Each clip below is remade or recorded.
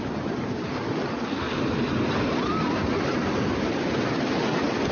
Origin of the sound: recorded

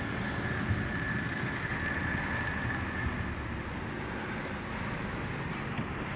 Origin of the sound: recorded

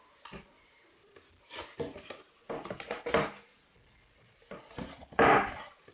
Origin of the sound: recorded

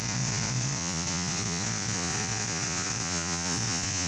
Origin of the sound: remade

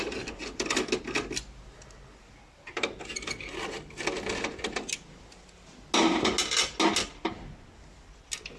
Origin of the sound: recorded